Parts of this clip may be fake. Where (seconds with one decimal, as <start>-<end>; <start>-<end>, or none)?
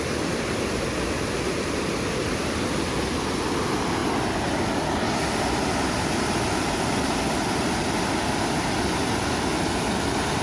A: none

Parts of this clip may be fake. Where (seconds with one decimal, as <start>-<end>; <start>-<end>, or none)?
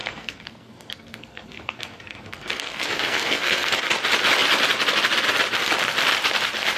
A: 0.0-3.8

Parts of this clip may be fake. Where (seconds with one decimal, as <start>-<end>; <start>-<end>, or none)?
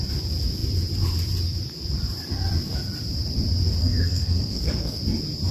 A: 3.8-5.0